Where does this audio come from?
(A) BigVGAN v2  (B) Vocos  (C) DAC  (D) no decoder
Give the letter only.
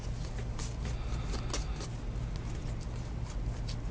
D